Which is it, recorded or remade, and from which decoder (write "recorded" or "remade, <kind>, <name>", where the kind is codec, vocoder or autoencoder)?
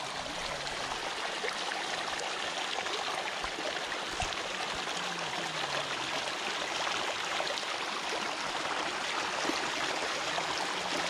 recorded